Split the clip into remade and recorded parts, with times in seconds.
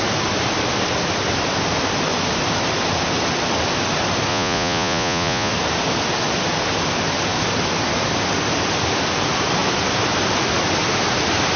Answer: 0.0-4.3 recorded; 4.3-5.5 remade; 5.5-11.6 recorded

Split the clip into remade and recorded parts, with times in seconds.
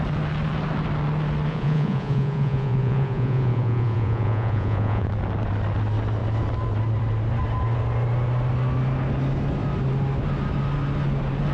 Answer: 0.0-1.5 recorded; 1.5-5.1 remade; 5.1-11.5 recorded